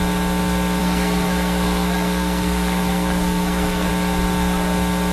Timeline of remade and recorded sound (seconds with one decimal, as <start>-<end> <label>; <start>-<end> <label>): 0.0-0.8 recorded; 0.8-3.9 remade; 3.9-5.1 recorded